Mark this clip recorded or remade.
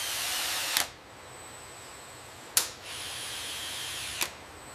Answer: recorded